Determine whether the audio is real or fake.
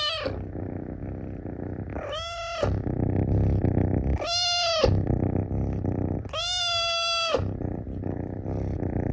real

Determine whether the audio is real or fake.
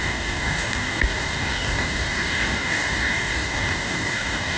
fake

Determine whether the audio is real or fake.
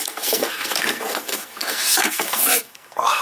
fake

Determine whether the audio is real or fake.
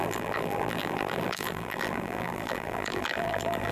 fake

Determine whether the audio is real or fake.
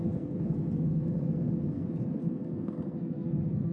fake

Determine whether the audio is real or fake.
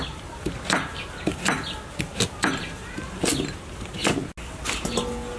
real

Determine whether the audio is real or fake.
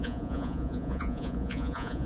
fake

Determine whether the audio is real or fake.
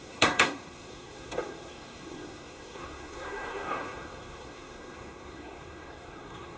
fake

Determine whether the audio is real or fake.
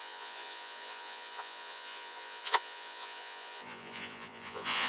fake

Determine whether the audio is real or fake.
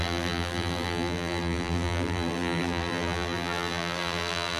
fake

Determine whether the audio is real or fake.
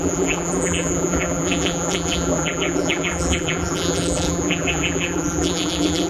fake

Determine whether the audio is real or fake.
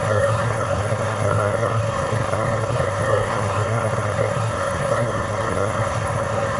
fake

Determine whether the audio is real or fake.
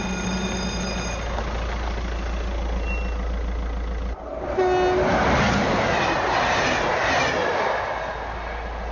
real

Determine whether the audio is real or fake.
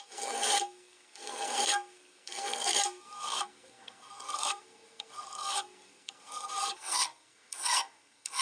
fake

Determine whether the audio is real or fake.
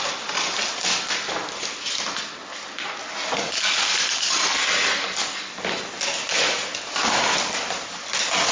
real